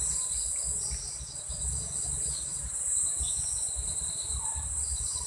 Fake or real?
real